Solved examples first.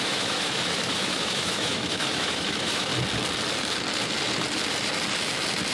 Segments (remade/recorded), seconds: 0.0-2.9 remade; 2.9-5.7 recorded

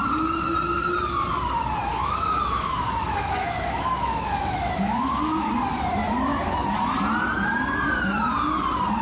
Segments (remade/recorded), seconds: 0.0-1.9 recorded; 1.9-5.5 remade; 5.5-9.0 recorded

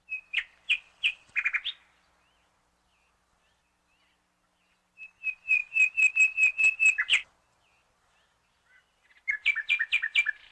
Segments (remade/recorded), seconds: 0.0-10.5 recorded

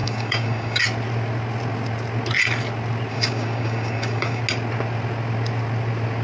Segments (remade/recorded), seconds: 0.0-0.8 remade; 0.8-3.1 recorded; 3.1-4.4 remade; 4.4-6.2 recorded

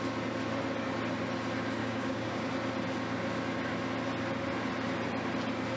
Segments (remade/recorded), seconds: 0.0-1.8 recorded; 1.8-2.5 remade; 2.5-5.8 recorded

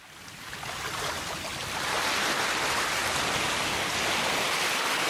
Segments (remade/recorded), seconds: 0.0-5.1 recorded

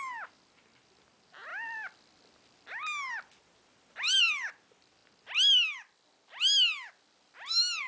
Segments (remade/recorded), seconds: 0.0-7.9 recorded